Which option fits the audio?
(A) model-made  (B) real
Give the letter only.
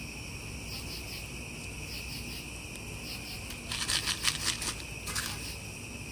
B